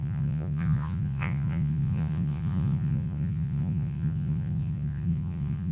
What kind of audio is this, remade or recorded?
remade